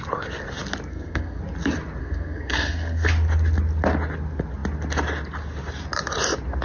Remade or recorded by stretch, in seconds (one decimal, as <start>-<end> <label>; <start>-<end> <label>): 0.0-0.9 recorded; 0.9-1.4 remade; 1.4-2.0 recorded; 2.0-3.1 remade; 3.1-6.6 recorded